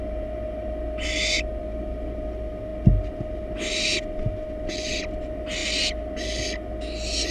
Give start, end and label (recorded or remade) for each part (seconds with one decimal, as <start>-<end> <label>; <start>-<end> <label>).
0.0-7.3 recorded

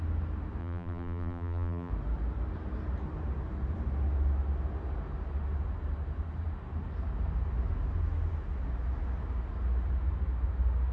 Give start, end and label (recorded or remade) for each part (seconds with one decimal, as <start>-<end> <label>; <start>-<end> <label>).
0.0-0.6 recorded; 0.6-1.9 remade; 1.9-10.9 recorded

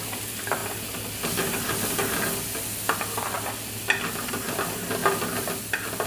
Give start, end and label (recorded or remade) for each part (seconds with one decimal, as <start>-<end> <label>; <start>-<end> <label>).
0.0-6.1 recorded

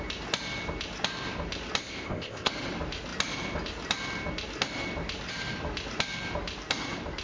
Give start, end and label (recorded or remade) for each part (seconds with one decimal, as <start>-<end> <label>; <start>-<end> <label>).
0.0-1.8 recorded; 1.8-2.5 remade; 2.5-7.2 recorded

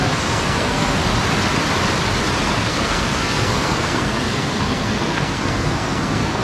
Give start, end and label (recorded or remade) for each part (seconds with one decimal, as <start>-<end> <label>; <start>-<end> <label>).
0.0-1.0 remade; 1.0-2.4 recorded; 2.4-6.4 remade

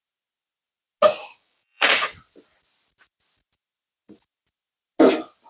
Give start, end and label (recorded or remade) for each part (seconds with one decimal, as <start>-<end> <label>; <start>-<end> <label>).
0.0-1.2 recorded; 1.2-2.1 remade; 2.1-5.5 recorded

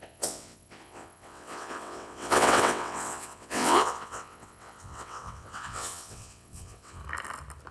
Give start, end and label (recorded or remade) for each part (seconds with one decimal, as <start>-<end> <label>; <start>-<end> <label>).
0.0-7.0 remade; 7.0-7.7 recorded

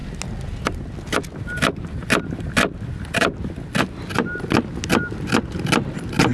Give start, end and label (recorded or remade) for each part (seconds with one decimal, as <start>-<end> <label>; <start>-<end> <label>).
0.0-6.3 recorded